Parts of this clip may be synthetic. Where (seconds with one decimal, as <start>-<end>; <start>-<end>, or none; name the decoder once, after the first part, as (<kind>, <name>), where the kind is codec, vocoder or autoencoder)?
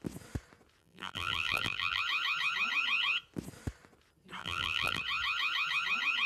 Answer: 0.8-2.0 (vocoder, BigVGAN v2); 4.4-5.0